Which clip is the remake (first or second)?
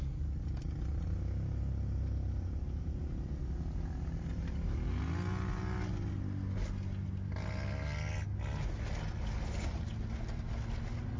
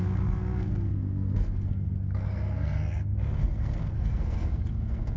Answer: second